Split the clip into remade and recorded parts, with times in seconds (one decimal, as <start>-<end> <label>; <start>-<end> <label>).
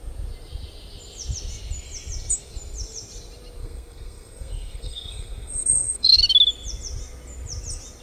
0.0-3.6 recorded; 3.6-6.2 remade; 6.2-8.0 recorded